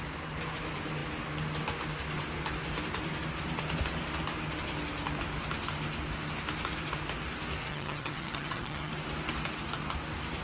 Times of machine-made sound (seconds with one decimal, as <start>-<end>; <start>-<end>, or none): 7.7-8.9